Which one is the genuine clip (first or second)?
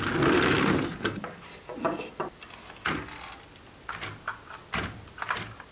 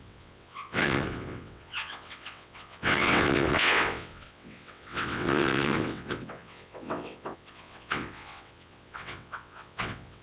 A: first